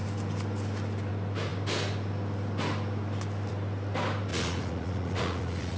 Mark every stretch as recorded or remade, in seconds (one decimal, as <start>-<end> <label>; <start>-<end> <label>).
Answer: 0.0-4.3 recorded; 4.3-5.8 remade

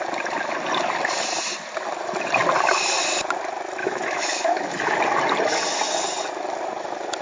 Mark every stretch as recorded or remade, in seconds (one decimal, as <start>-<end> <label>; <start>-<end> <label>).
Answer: 0.0-3.8 recorded; 3.8-5.0 remade; 5.0-7.2 recorded

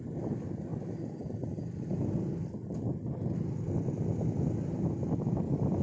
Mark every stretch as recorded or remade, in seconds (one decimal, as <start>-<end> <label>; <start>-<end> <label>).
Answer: 0.0-5.8 recorded

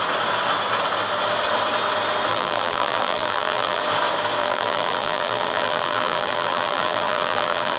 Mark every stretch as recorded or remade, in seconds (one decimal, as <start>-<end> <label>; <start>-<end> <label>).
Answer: 0.0-2.3 recorded; 2.3-3.8 remade; 3.8-4.4 recorded; 4.4-7.8 remade

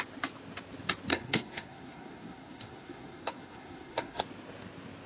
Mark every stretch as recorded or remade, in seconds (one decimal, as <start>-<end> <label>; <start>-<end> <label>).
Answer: 0.0-1.1 recorded; 1.1-4.2 remade; 4.2-5.1 recorded

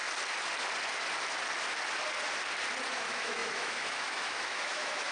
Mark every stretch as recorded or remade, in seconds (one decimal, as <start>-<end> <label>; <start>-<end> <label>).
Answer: 0.0-2.9 recorded; 2.9-5.1 remade

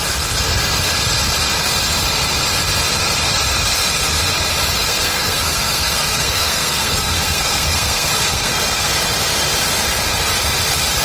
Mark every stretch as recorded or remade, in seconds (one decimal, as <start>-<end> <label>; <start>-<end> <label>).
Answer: 0.0-4.8 recorded; 4.8-8.9 remade; 8.9-11.0 recorded